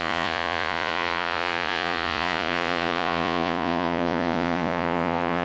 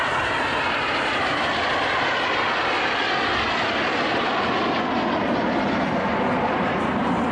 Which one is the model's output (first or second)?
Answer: first